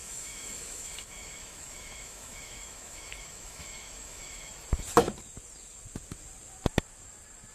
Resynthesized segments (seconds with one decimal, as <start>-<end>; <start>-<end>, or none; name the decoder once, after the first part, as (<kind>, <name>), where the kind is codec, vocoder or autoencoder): 0.0-4.5 (autoencoder, DAC-VAE)